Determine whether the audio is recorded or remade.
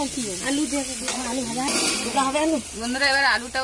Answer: recorded